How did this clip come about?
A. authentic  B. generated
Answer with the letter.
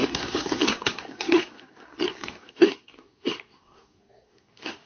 B